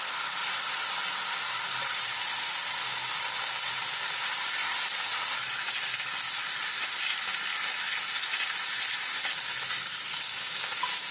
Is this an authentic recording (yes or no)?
yes